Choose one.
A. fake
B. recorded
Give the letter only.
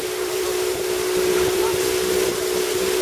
A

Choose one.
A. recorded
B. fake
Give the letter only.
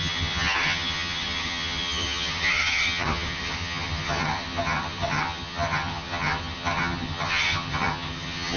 B